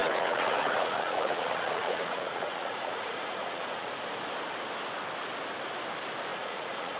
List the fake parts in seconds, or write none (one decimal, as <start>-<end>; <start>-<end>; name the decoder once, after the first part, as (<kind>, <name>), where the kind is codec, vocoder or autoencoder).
0.0-3.9 (vocoder, Vocos); 6.3-7.0